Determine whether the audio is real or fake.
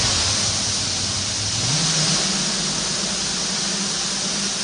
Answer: real